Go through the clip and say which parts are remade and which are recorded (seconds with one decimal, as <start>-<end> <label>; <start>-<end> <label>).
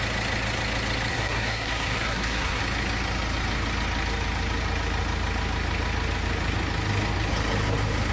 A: 0.0-1.1 recorded; 1.1-2.6 remade; 2.6-8.1 recorded